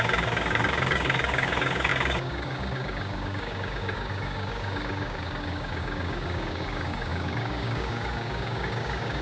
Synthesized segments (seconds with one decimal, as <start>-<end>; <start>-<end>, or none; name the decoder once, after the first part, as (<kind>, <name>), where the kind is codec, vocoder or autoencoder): 0.0-9.2 (codec, DAC)